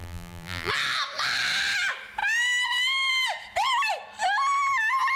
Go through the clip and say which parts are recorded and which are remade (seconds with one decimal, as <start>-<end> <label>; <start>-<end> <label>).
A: 0.0-0.7 remade; 0.7-5.2 recorded